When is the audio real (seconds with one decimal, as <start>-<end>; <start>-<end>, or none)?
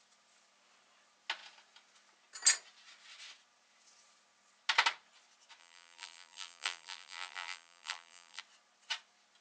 0.0-5.6; 8.4-9.4